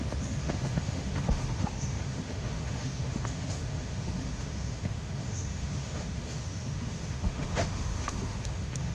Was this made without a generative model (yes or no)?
no